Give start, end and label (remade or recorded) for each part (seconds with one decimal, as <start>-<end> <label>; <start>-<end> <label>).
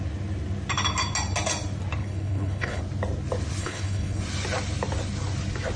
0.0-2.0 recorded; 2.0-2.8 remade; 2.8-3.6 recorded; 3.6-4.2 remade; 4.2-5.8 recorded